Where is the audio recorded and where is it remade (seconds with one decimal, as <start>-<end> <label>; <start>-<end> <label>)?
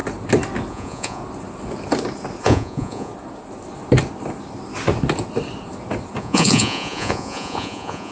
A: 0.0-0.7 recorded; 0.7-1.2 remade; 1.2-2.4 recorded; 2.4-3.1 remade; 3.1-6.2 recorded; 6.2-8.1 remade